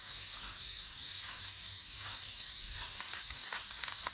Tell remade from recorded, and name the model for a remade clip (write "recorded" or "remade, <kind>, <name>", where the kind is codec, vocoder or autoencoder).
remade, codec, DAC